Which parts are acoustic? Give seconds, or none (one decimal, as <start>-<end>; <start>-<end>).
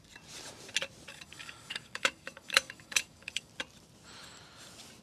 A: 0.0-1.1; 3.5-5.0